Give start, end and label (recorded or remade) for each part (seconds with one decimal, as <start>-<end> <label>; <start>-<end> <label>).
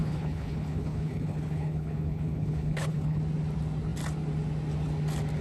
0.0-3.2 remade; 3.2-5.4 recorded